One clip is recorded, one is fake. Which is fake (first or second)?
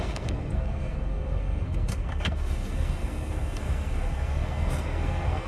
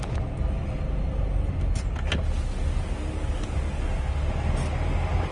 first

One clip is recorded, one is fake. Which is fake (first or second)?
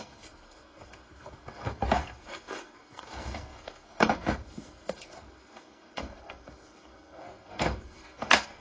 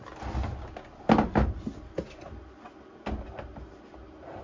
first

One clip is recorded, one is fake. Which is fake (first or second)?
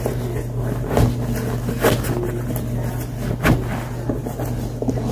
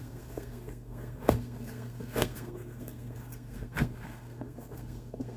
second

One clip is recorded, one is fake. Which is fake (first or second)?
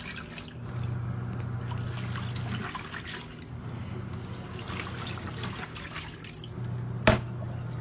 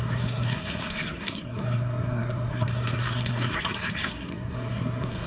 second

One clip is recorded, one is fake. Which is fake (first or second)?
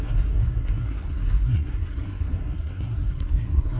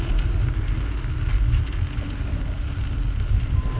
first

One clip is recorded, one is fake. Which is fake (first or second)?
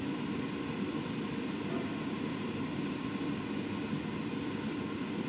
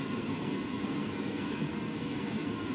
second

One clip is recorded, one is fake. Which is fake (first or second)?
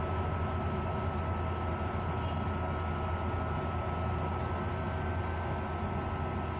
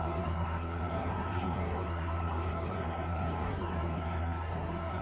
second